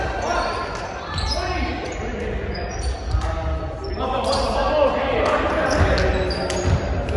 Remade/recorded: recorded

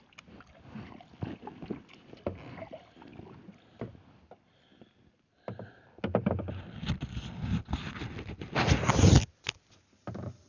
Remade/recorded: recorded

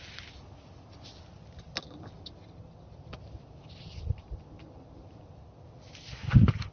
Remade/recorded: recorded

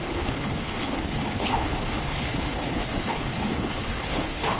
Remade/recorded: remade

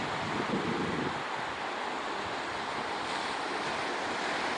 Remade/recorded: recorded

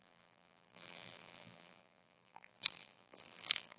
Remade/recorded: remade